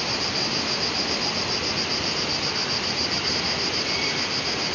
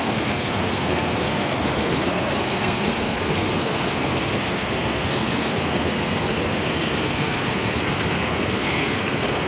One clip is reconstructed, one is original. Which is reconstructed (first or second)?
second